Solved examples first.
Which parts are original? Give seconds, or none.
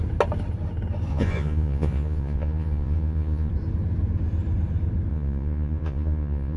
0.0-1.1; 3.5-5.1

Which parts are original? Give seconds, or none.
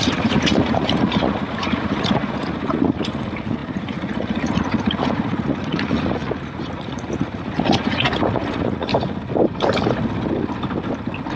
8.9-11.4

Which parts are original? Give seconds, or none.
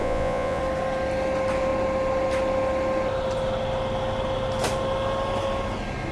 0.6-6.1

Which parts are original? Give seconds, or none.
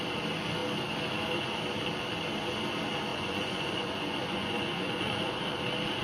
0.0-3.1; 5.6-6.0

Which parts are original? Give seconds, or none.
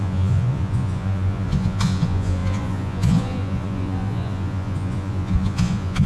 none